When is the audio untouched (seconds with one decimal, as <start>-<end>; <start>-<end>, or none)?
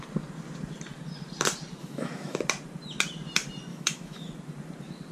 0.0-1.8; 2.4-3.7; 4.3-5.1